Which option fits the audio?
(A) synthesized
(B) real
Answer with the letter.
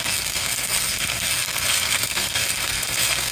A